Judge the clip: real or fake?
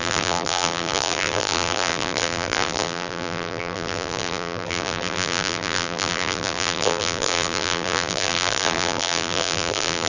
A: fake